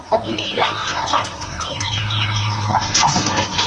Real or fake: fake